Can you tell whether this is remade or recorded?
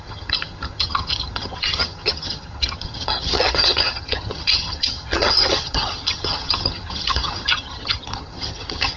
remade